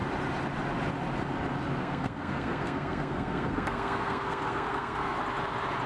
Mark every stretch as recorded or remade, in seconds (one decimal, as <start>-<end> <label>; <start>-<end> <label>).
0.0-1.8 recorded; 1.8-5.2 remade; 5.2-5.9 recorded